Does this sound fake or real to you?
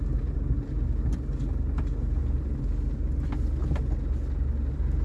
real